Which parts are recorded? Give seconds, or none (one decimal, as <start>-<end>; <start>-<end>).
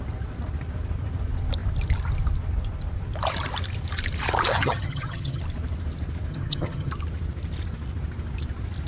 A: 0.0-4.5; 5.4-6.3; 6.9-8.9